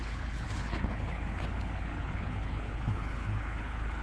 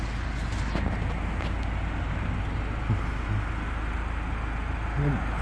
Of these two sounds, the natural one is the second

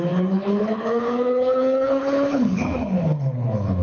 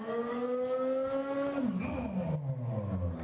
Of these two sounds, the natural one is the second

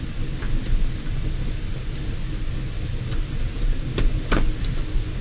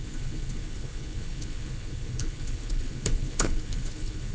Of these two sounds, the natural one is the first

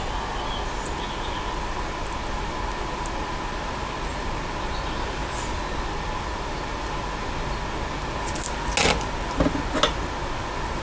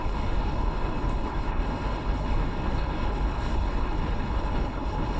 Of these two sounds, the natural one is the first